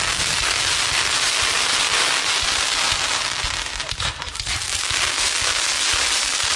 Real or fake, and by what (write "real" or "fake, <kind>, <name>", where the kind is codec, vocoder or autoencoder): real